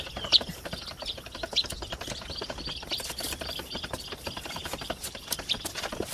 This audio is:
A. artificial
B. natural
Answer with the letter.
B